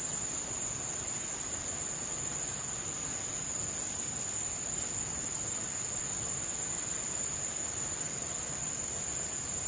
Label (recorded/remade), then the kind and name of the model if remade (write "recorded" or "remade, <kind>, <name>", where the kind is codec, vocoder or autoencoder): recorded